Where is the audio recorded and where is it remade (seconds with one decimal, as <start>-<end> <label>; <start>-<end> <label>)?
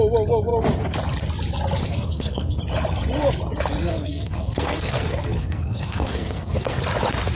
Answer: 0.0-1.8 recorded; 1.8-2.6 remade; 2.6-3.9 recorded; 3.9-6.8 remade; 6.8-7.3 recorded